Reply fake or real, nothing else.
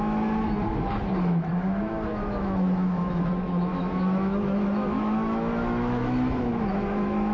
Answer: fake